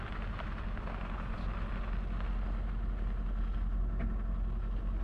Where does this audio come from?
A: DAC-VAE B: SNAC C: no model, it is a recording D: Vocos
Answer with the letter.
C